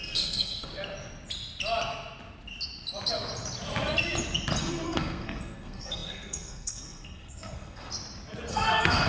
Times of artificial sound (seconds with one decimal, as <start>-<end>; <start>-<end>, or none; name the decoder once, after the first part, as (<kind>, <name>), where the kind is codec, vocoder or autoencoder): 0.0-0.7 (codec, SNAC); 4.6-7.9; 8.5-9.1